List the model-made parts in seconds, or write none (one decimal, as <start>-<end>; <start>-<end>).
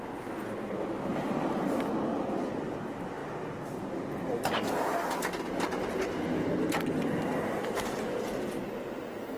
1.1-1.9